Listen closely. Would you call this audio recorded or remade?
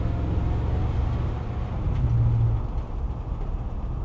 recorded